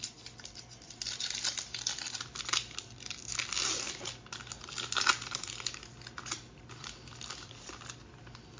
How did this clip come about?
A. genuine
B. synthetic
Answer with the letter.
A